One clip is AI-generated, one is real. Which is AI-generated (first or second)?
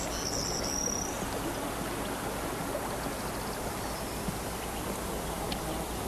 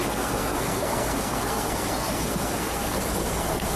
second